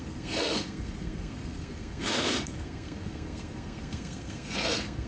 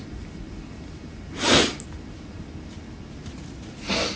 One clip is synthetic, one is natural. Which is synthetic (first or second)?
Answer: first